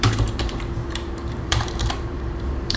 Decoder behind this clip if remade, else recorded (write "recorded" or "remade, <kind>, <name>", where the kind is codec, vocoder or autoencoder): remade, vocoder, BigVGAN v2